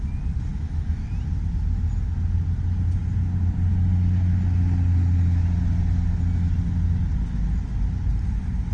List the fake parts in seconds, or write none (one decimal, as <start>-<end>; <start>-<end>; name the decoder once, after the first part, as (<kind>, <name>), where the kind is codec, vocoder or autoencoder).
0.5-1.1 (autoencoder, DAC-VAE)